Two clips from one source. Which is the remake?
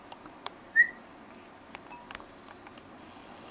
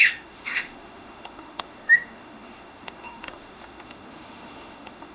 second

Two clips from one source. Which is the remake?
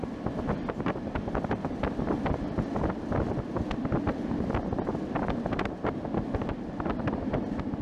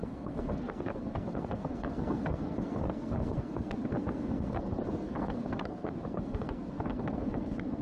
second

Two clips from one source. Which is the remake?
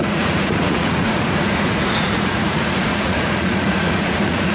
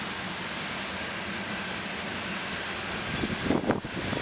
first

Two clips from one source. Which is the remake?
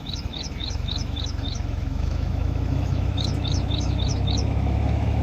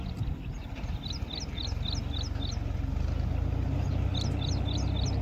first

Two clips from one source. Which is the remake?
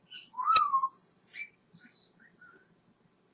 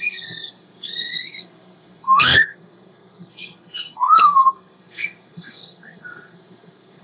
second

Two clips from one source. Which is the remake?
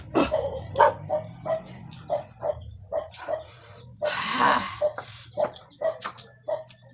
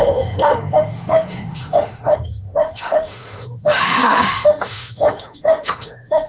second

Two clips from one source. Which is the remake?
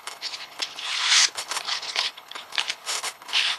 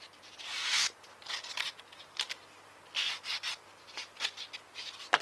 first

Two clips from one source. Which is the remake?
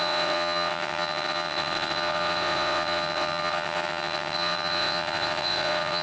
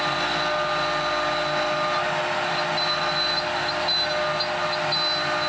first